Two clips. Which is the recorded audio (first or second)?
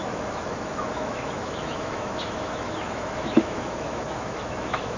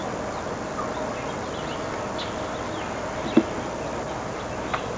second